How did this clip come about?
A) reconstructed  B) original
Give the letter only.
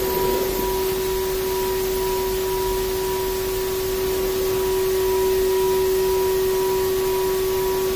B